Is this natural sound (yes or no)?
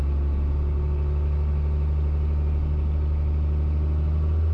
yes